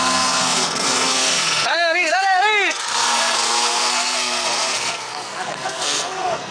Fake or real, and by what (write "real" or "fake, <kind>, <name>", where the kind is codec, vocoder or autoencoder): fake, codec, SNAC